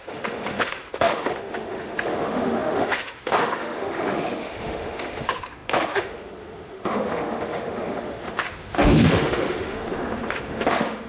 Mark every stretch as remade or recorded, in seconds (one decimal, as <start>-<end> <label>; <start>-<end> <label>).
0.0-11.1 remade